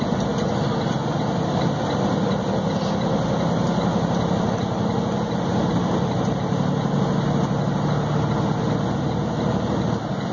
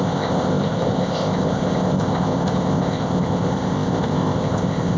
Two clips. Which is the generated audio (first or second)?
second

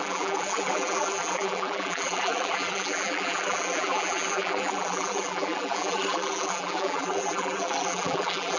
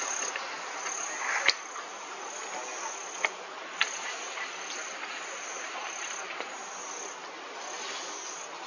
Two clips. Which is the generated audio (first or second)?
first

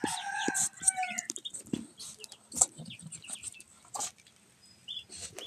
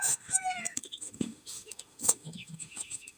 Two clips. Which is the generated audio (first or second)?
second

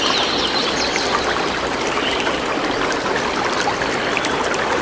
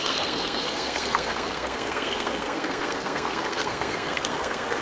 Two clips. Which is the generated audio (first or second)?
second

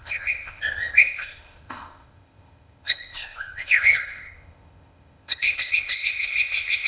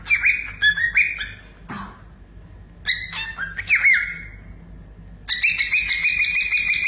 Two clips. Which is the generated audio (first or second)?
first